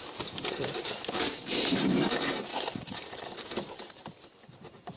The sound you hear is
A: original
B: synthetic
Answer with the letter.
B